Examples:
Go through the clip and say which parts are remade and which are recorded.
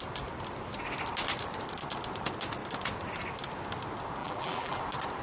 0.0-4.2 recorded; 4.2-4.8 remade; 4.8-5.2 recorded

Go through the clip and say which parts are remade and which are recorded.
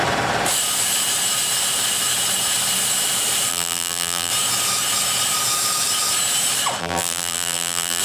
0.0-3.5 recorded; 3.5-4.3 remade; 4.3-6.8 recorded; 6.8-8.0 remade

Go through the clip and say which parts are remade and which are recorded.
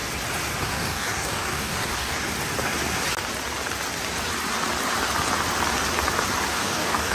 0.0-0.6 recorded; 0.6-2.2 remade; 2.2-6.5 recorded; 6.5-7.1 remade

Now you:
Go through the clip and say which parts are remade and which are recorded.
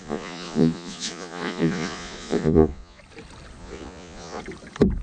0.0-3.0 remade; 3.0-3.6 recorded; 3.6-4.4 remade; 4.4-5.0 recorded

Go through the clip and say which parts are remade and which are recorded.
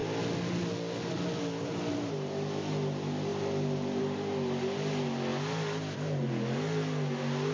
0.0-7.5 recorded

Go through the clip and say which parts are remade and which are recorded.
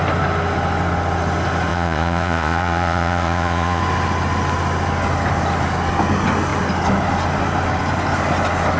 0.0-1.7 recorded; 1.7-3.8 remade; 3.8-8.8 recorded